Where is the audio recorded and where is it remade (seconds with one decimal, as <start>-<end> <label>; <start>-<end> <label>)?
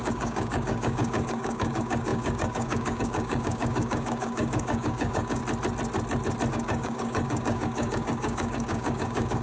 0.0-5.4 remade; 5.4-6.5 recorded; 6.5-9.4 remade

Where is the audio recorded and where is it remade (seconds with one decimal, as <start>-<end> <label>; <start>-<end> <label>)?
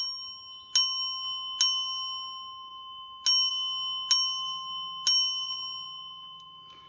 0.0-6.9 recorded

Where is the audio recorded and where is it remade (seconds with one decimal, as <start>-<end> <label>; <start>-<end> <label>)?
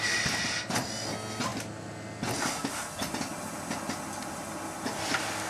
0.0-5.5 recorded